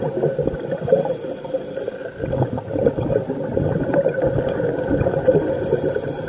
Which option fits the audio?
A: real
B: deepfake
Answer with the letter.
A